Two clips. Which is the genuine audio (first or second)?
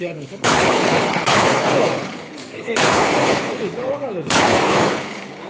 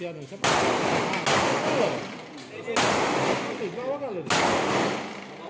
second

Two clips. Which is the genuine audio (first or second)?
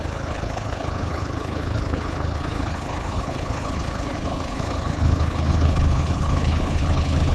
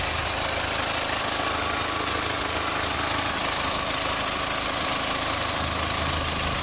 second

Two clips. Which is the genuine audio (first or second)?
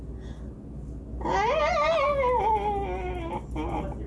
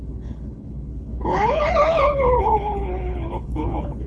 first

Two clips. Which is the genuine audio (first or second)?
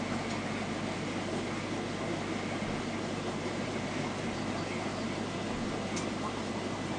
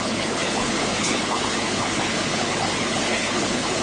first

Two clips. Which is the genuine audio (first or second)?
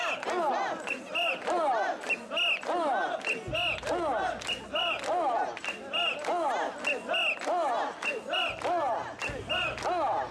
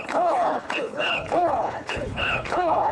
first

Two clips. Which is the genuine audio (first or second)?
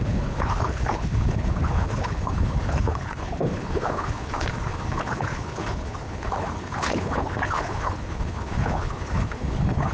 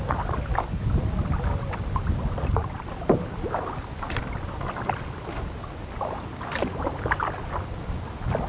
second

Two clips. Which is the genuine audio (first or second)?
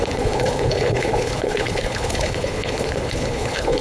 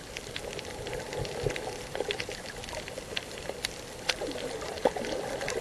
second